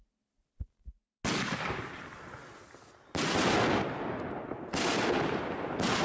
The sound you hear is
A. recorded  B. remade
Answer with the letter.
A